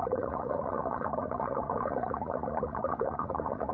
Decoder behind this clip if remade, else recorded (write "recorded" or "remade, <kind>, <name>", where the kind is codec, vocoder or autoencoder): remade, vocoder, Vocos